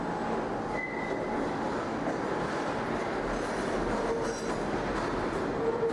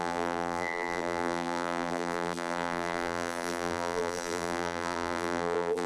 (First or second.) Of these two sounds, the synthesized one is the second